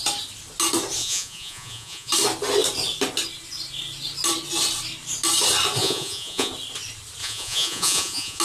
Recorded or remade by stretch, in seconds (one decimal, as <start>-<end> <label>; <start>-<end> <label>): 0.0-1.0 recorded; 1.0-2.1 remade; 2.1-5.8 recorded; 5.8-6.5 remade; 6.5-7.2 recorded; 7.2-8.4 remade